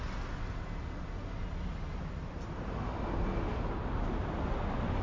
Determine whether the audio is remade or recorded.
recorded